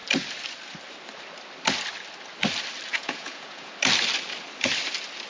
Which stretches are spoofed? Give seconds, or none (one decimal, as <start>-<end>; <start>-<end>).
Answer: 2.9-3.7